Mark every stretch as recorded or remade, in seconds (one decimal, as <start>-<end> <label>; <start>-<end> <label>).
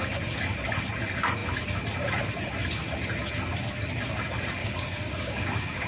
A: 0.0-4.6 recorded; 4.6-5.9 remade